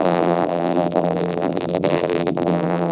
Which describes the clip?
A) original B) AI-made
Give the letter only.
B